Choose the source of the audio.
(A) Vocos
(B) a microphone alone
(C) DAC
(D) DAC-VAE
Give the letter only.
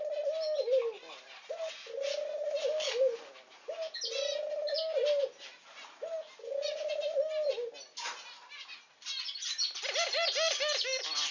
B